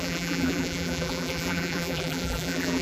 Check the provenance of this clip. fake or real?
fake